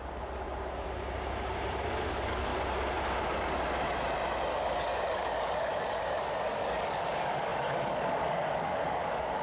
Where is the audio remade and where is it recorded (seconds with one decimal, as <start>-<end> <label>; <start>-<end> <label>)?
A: 0.0-2.1 recorded; 2.1-2.5 remade; 2.5-4.5 recorded; 4.5-9.4 remade